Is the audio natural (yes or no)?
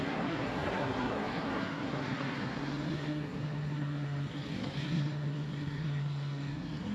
no